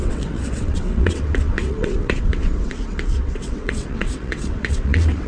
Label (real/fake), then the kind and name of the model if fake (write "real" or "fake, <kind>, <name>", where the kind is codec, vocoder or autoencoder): fake, vocoder, WaveNeXt